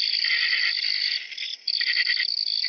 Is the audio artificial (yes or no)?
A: no